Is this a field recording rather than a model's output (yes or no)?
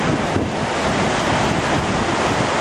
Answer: yes